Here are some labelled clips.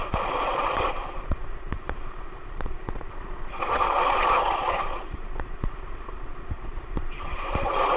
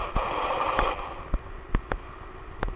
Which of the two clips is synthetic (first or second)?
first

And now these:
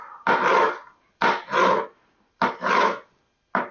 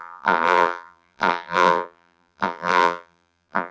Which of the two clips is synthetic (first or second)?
second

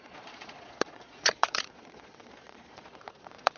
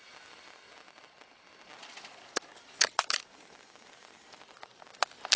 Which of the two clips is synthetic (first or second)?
first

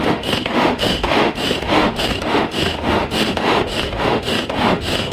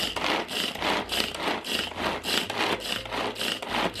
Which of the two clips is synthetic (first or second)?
first